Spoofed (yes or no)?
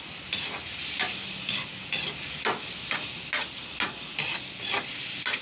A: no